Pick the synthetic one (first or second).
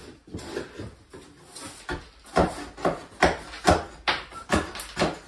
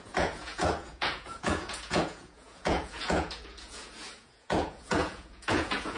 second